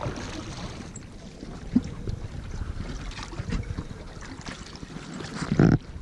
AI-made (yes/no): no